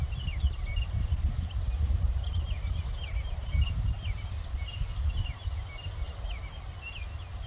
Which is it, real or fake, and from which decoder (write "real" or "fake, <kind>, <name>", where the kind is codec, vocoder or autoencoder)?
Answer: real